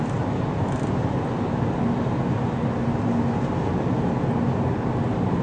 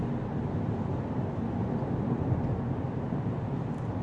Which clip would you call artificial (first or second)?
second